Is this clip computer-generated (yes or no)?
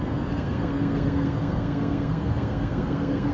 yes